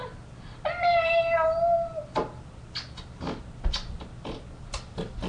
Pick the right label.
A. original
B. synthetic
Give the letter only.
A